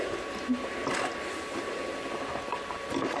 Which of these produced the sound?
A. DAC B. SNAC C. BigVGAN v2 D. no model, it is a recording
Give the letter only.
D